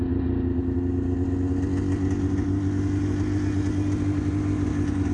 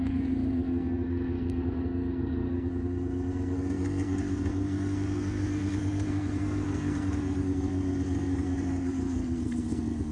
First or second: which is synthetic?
second